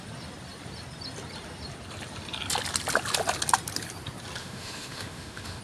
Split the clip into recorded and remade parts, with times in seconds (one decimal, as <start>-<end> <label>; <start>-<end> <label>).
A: 0.0-4.4 recorded; 4.4-5.6 remade